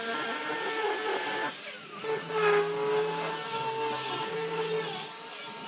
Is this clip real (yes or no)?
yes